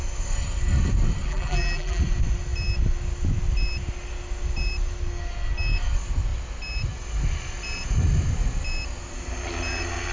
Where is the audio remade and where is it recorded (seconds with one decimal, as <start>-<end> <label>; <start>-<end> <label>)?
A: 0.0-1.3 recorded; 1.3-2.0 remade; 2.0-10.1 recorded